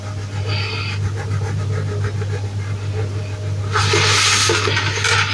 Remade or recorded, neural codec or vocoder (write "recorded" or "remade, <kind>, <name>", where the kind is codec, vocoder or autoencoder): recorded